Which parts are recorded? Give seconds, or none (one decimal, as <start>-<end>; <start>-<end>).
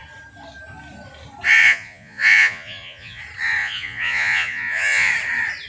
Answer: 0.0-1.6; 3.2-3.6; 5.1-5.7